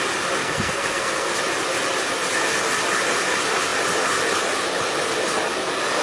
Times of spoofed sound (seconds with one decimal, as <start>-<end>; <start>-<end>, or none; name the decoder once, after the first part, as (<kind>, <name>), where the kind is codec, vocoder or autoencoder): 0.4-1.3 (codec, SNAC)